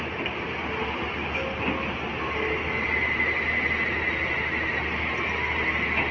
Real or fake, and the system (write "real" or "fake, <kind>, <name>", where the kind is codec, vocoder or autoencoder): real